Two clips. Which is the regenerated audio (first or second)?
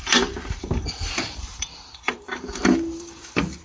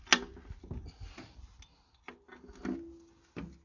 first